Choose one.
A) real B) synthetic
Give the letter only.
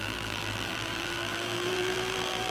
B